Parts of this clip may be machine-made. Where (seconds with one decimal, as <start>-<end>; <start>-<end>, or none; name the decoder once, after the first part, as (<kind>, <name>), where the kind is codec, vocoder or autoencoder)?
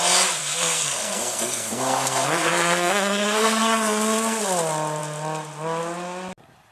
0.4-4.4 (codec, SNAC)